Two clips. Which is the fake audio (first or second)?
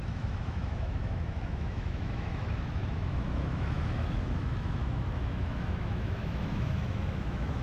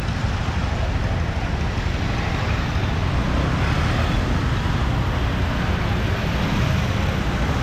first